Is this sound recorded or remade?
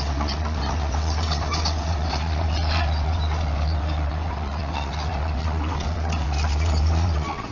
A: remade